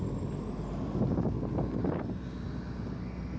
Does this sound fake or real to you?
real